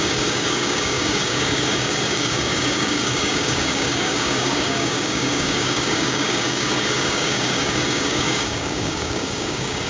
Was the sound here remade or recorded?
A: remade